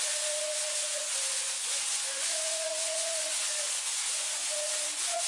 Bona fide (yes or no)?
no